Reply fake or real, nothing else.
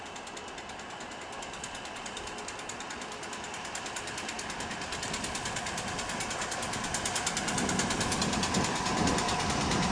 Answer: real